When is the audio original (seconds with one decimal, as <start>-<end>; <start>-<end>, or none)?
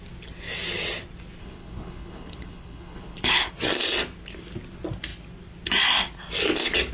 0.0-1.4; 3.5-6.9